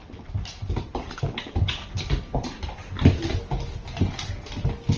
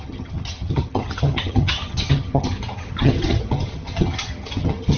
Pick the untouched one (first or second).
first